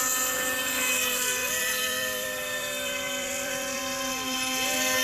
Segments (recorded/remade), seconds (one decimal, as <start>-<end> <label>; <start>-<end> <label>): 0.0-1.4 recorded; 1.4-3.8 remade; 3.8-5.0 recorded

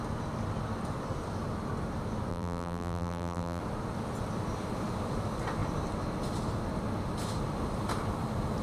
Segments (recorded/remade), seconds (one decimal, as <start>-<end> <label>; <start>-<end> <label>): 0.0-2.3 recorded; 2.3-3.6 remade; 3.6-8.6 recorded

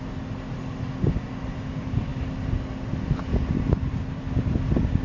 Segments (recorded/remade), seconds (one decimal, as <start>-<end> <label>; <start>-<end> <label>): 0.0-5.0 recorded

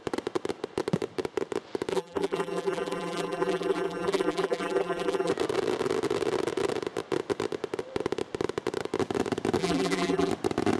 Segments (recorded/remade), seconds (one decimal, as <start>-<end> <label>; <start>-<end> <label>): 0.0-1.9 recorded; 1.9-5.3 remade; 5.3-9.6 recorded; 9.6-10.3 remade; 10.3-10.8 recorded